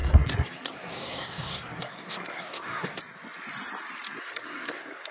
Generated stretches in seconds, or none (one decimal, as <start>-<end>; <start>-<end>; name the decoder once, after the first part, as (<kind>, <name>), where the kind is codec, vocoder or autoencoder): 0.0-3.0 (codec, SNAC); 4.2-5.1